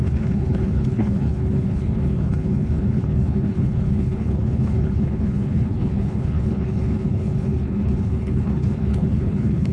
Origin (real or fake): fake